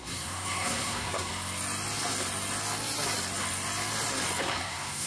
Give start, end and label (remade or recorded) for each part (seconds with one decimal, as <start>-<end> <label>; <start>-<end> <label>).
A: 0.0-1.3 remade; 1.3-4.4 recorded; 4.4-5.1 remade